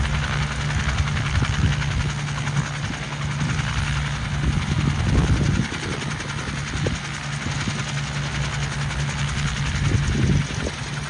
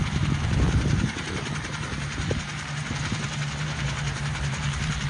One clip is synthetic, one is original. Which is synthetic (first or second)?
second